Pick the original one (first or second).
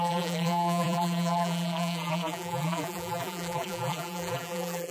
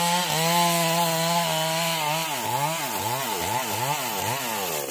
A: second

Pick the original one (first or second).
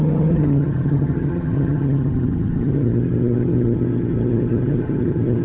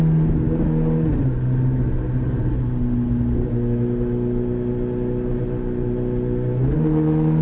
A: second